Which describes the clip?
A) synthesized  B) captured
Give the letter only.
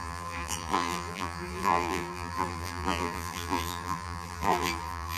A